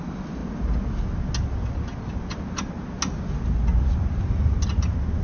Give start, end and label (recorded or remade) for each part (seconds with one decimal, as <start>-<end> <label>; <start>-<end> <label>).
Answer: 0.0-5.2 recorded